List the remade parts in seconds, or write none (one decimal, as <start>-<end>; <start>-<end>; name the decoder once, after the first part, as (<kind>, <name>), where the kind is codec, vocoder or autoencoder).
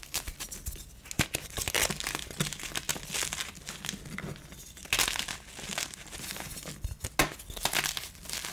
none